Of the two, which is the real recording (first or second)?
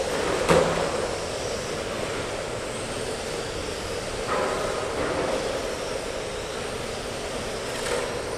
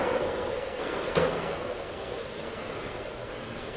first